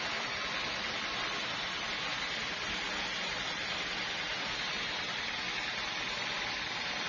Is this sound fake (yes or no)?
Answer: no